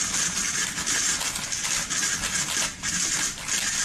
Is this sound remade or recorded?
recorded